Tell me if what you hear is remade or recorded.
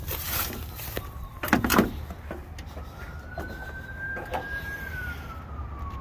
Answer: recorded